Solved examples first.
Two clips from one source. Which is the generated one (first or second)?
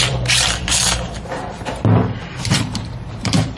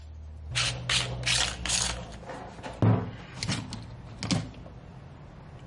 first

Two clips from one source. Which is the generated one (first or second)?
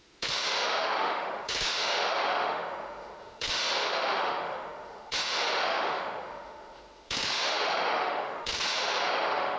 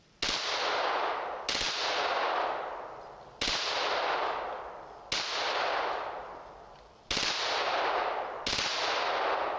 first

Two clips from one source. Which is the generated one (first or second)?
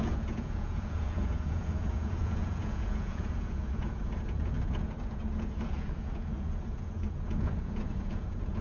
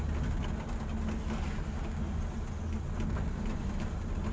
first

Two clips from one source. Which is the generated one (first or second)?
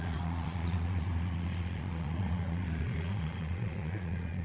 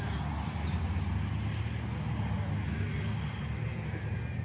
first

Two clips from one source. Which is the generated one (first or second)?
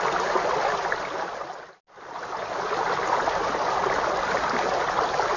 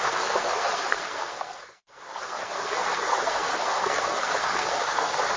second